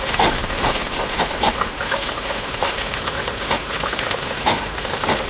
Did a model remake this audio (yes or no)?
yes